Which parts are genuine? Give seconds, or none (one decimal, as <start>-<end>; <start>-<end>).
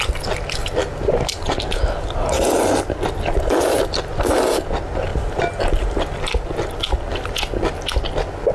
0.0-0.6; 1.6-5.1; 6.0-8.5